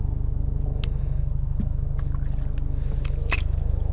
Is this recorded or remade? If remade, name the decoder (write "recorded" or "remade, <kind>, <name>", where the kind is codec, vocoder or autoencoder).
recorded